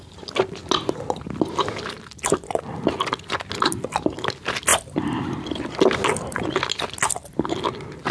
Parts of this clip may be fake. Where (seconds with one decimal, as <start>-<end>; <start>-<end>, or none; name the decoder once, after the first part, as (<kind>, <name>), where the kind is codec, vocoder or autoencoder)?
none